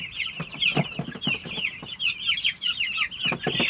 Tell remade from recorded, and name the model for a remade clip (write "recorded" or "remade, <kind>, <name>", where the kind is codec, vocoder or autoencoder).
recorded